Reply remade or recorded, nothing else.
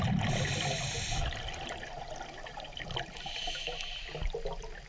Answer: recorded